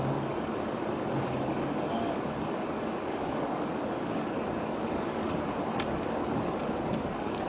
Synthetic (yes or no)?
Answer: yes